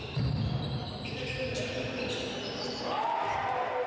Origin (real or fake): real